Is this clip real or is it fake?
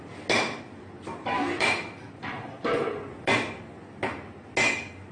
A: real